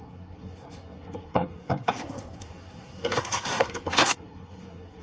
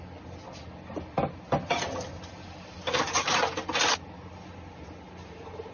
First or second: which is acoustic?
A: second